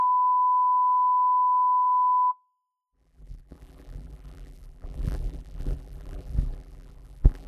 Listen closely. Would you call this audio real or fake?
fake